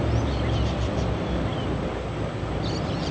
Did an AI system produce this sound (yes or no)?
no